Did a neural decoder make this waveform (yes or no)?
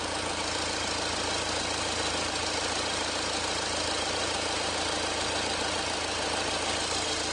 no